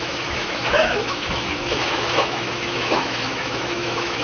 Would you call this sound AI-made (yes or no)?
yes